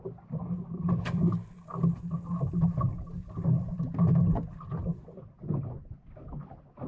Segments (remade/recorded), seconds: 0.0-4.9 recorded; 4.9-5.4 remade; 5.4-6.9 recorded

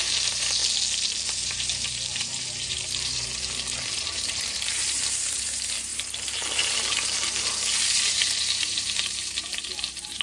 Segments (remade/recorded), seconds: 0.0-0.6 remade; 0.6-1.2 recorded; 1.2-10.2 remade

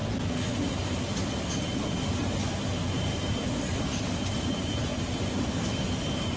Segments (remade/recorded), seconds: 0.0-3.8 recorded; 3.8-4.9 remade; 4.9-5.6 recorded; 5.6-6.4 remade

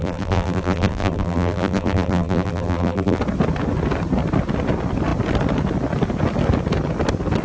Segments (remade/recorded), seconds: 0.0-3.2 remade; 3.2-7.4 recorded

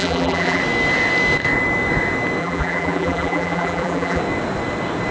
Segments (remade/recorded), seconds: 0.0-0.6 remade; 0.6-2.4 recorded; 2.4-4.2 remade; 4.2-5.1 recorded

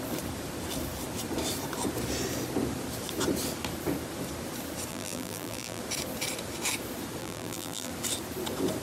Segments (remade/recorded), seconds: 0.0-4.9 recorded; 4.9-5.8 remade; 5.8-7.2 recorded; 7.2-7.9 remade; 7.9-8.8 recorded

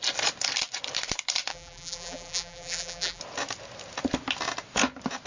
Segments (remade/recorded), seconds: 0.0-1.5 recorded; 1.5-3.2 remade; 3.2-5.3 recorded